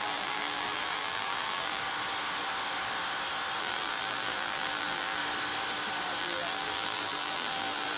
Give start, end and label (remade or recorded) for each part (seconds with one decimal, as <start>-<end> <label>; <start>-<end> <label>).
0.0-1.8 remade; 1.8-3.6 recorded; 3.6-5.2 remade; 5.2-6.2 recorded; 6.2-8.0 remade